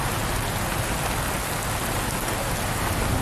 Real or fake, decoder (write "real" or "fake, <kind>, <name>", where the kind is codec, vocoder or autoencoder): real